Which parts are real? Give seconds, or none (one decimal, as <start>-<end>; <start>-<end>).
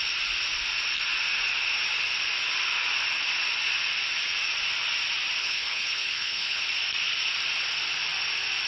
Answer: 0.0-5.4; 6.6-8.7